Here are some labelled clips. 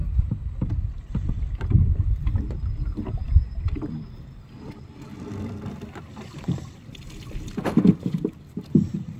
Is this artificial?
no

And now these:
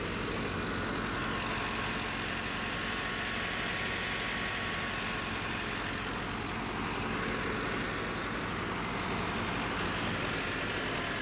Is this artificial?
no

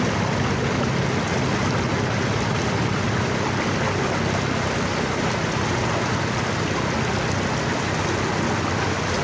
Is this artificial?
no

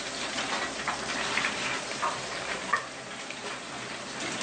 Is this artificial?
yes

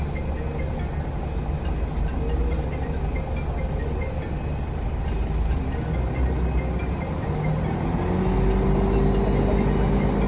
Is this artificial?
no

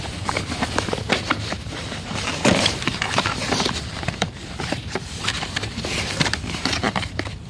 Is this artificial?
yes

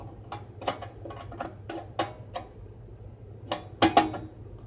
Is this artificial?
no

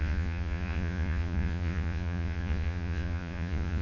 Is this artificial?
yes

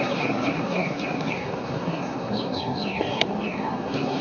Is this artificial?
yes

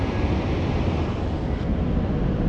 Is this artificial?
no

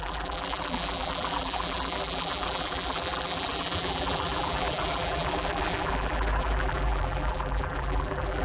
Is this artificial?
yes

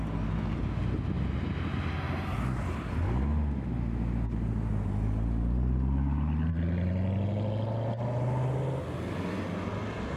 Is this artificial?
no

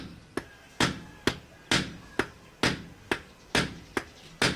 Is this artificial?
no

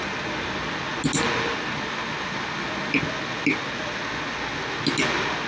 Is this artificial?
no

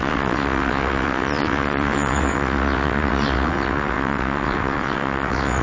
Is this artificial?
yes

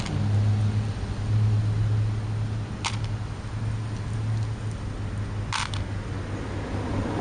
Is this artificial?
no